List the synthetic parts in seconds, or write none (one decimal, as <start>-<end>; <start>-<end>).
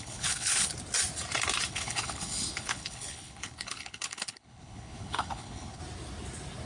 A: 0.0-0.7; 1.7-5.8